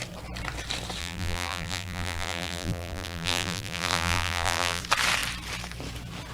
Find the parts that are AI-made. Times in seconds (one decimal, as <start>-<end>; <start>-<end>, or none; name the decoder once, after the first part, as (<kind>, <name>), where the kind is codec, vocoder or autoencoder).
1.0-4.8 (vocoder, BigVGAN v2)